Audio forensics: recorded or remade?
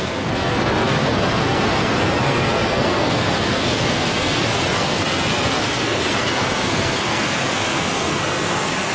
remade